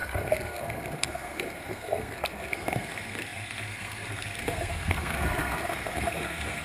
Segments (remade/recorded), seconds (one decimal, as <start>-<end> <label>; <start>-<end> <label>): 0.0-6.6 remade